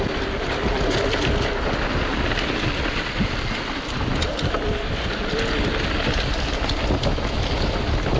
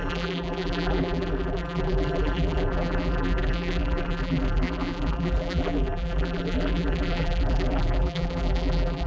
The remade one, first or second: second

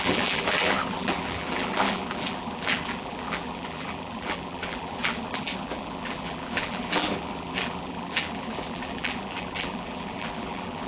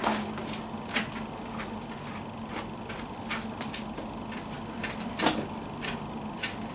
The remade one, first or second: first